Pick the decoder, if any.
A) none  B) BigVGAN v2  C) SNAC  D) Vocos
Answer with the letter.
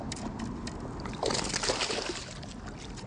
A